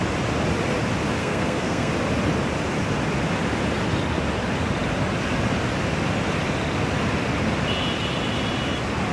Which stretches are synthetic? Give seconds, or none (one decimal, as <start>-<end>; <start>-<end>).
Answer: 1.2-1.9